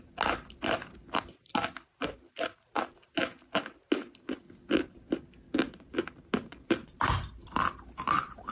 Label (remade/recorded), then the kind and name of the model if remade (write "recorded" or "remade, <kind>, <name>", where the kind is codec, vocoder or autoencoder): recorded